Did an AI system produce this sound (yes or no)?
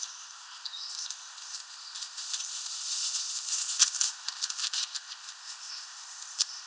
yes